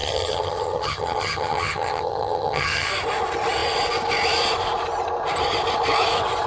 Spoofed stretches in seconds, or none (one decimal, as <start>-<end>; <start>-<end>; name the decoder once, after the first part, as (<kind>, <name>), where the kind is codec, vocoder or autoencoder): 0.0-2.9 (vocoder, HiFi-GAN)